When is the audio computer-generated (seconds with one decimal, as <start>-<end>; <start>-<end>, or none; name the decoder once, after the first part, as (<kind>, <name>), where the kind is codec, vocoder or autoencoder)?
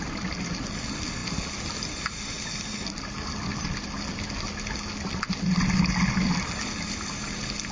none